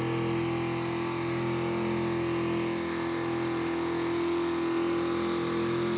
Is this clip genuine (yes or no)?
yes